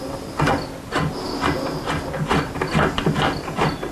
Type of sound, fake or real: real